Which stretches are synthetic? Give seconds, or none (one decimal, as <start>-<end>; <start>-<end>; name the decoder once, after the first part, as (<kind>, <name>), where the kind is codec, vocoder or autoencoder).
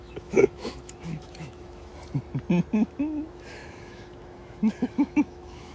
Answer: 0.0-1.9 (autoencoder, DAC-VAE); 2.7-5.7